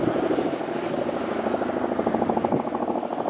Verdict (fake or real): real